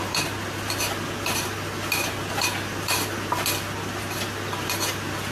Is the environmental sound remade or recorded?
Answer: recorded